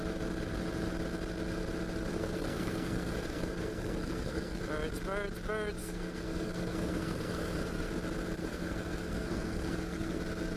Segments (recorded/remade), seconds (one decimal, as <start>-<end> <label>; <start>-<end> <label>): 0.0-2.1 recorded; 2.1-4.6 remade; 4.6-5.8 recorded; 5.8-7.9 remade; 7.9-8.4 recorded; 8.4-10.2 remade; 10.2-10.6 recorded